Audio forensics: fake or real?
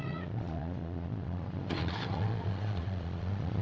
fake